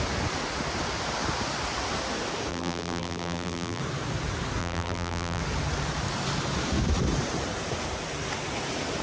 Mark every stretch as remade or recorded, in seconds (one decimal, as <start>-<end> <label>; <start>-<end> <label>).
0.0-2.5 recorded; 2.5-3.8 remade; 3.8-4.6 recorded; 4.6-5.4 remade; 5.4-9.0 recorded